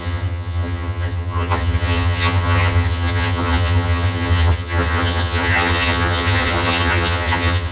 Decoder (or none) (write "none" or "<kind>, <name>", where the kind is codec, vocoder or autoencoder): vocoder, HiFi-GAN